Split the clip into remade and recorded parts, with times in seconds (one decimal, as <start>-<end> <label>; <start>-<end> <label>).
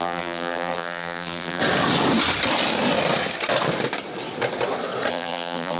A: 0.0-1.6 remade; 1.6-5.1 recorded; 5.1-5.8 remade